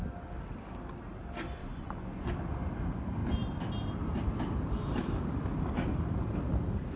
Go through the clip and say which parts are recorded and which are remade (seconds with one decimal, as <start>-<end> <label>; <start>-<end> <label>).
0.0-1.6 recorded; 1.6-2.3 remade; 2.3-7.0 recorded